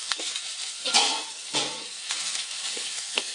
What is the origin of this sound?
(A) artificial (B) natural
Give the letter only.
A